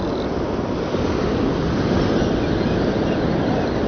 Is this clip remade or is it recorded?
recorded